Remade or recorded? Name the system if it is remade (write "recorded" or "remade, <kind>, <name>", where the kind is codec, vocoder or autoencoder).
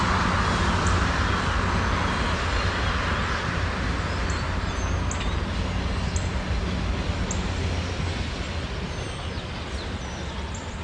recorded